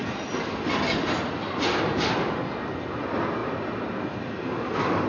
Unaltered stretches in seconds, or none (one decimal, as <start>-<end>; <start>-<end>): 0.0-5.1